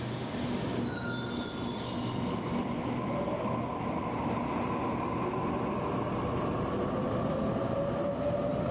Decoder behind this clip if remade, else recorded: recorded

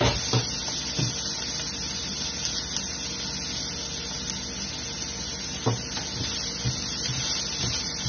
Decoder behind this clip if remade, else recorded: recorded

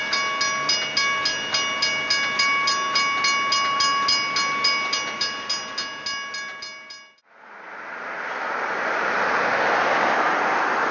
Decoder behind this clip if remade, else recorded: recorded